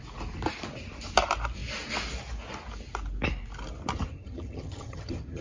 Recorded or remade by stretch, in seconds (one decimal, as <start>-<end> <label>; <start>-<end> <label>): 0.0-4.1 recorded; 4.1-5.4 remade